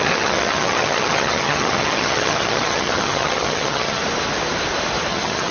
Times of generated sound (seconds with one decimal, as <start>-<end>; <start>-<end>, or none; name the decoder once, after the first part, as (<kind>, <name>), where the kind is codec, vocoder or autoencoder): 0.0-4.0 (vocoder, HiFi-GAN); 5.1-5.5